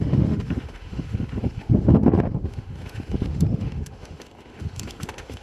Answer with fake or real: fake